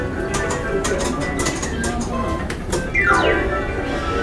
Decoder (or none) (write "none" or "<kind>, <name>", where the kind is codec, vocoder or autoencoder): none